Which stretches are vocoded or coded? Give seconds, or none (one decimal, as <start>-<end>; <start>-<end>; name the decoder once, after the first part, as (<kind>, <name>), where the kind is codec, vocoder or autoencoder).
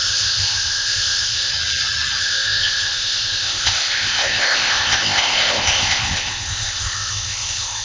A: 0.0-1.5 (codec, ZipCodec); 2.2-7.8